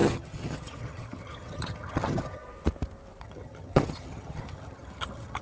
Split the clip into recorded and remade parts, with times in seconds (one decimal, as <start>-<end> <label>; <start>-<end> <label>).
0.0-2.4 remade; 2.4-3.2 recorded; 3.2-5.4 remade